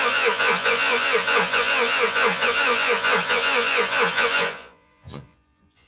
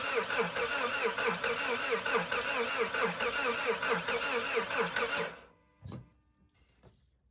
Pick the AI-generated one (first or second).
first